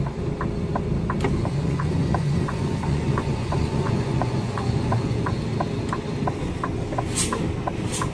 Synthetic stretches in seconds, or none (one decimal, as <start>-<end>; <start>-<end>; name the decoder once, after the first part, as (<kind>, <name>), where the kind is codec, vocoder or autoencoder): 1.4-5.4 (vocoder, Vocos)